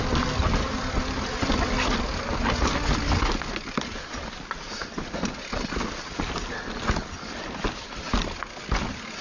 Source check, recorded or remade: recorded